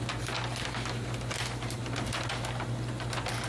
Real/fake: real